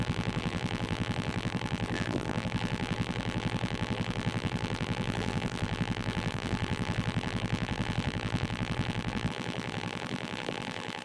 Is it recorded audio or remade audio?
remade